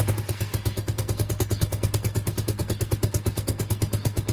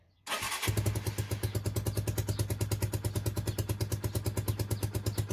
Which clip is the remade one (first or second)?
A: first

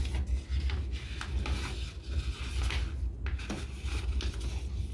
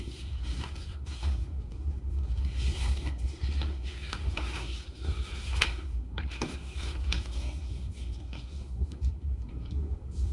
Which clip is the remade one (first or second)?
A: second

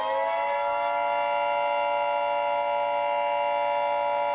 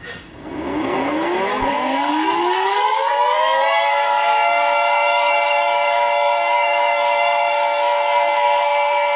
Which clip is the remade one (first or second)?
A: second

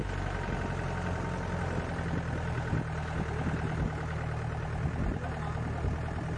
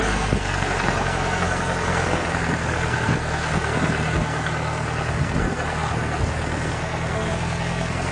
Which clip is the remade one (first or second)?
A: second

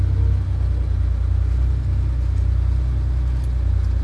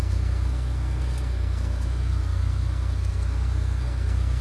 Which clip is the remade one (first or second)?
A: second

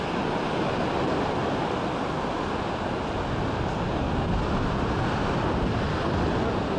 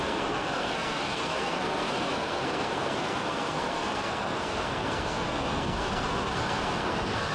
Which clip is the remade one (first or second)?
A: second